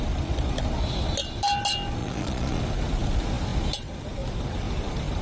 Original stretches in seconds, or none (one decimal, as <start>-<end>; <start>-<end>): 0.0-2.0; 2.6-5.2